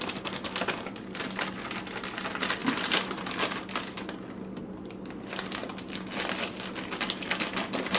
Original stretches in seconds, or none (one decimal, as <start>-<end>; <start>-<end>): 0.0-8.0